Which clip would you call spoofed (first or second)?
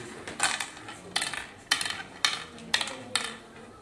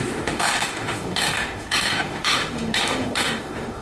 second